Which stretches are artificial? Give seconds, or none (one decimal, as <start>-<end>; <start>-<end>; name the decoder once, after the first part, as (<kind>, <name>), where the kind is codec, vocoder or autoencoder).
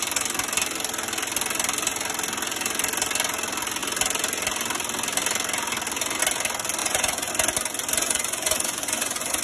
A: 6.8-7.3 (vocoder, Vocos); 8.0-9.4